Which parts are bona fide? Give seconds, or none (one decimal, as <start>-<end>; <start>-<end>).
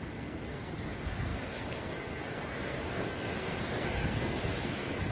none